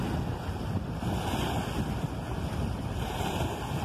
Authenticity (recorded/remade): recorded